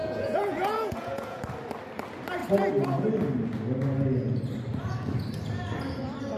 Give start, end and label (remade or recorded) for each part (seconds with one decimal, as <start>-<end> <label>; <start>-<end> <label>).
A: 0.0-1.4 remade; 1.4-6.4 recorded